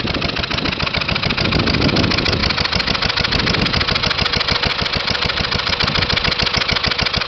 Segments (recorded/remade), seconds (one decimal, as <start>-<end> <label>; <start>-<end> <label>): 0.0-4.7 recorded; 4.7-5.7 remade; 5.7-7.3 recorded